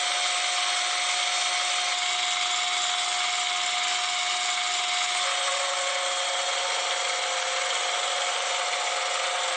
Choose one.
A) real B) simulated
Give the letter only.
A